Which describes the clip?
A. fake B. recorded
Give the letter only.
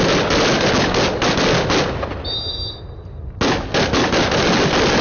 B